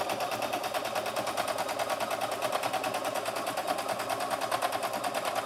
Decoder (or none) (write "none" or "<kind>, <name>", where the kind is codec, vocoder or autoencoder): none